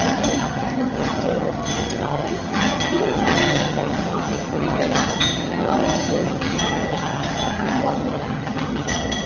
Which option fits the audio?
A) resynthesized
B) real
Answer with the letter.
A